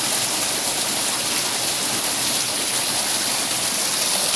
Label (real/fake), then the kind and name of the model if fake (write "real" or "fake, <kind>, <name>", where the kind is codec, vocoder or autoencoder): real